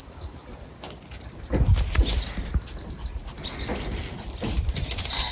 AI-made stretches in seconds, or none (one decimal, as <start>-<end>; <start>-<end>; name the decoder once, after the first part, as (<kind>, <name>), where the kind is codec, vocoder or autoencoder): none